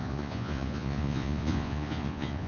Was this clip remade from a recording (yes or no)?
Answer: yes